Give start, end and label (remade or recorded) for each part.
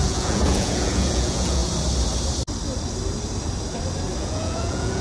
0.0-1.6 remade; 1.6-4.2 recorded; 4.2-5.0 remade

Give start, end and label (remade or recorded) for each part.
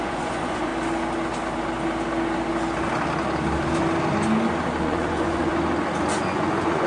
0.0-0.7 remade; 0.7-4.8 recorded; 4.8-5.5 remade; 5.5-6.2 recorded; 6.2-6.9 remade